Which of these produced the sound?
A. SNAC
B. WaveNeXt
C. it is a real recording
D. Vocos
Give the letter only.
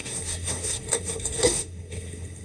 A